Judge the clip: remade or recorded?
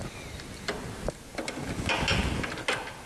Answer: recorded